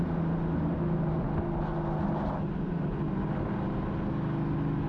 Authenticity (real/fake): real